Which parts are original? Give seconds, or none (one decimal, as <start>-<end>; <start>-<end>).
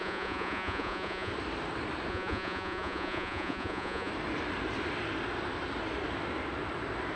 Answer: 1.3-2.1; 4.1-7.2